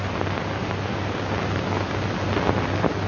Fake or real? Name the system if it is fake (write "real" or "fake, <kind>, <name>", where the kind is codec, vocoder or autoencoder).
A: real